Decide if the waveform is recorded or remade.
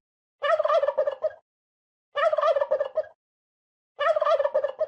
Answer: recorded